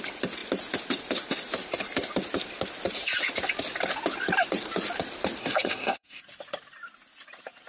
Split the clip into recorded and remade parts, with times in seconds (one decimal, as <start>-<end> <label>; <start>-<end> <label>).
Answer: 0.0-5.4 recorded; 5.4-6.2 remade; 6.2-7.7 recorded